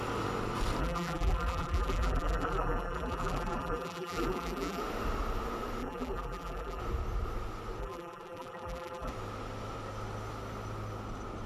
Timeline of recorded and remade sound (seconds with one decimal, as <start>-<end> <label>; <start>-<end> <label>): 0.0-0.8 recorded; 0.8-4.8 remade; 4.8-5.8 recorded; 5.8-6.8 remade; 6.8-7.8 recorded; 7.8-9.1 remade; 9.1-11.5 recorded